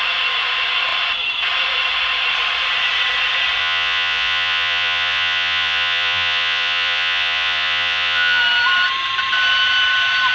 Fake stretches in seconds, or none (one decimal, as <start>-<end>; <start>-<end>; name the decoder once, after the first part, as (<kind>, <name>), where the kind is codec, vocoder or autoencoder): 3.6-8.4 (vocoder, Vocos)